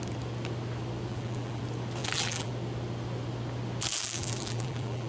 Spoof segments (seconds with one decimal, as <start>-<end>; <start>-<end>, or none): 1.1-1.6; 2.0-2.5; 3.9-5.1

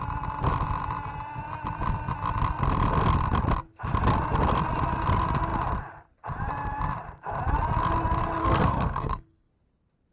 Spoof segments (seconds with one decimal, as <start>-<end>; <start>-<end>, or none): 8.4-9.5

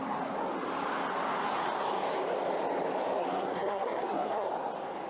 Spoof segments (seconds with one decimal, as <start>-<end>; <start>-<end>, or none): 3.2-4.5

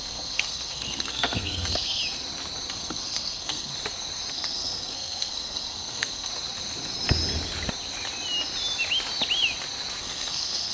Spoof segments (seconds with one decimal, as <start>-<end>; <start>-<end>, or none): 0.0-2.0; 2.7-3.7; 4.3-6.3; 10.0-10.7

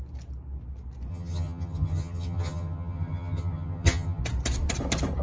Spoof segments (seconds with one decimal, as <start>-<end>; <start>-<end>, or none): 1.1-4.2

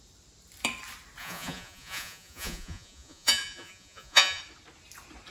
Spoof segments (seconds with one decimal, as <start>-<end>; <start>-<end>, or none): 1.2-4.4

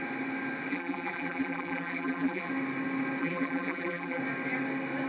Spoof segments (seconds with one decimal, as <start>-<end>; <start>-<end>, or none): 0.7-2.5; 3.2-4.2

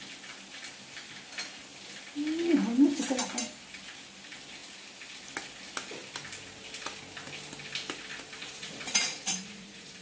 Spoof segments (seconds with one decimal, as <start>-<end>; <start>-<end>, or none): 8.4-10.0